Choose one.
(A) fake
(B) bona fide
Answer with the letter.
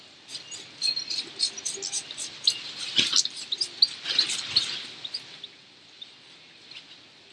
B